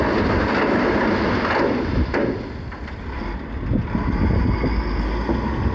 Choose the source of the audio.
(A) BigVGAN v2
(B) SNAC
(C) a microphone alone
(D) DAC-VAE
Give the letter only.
C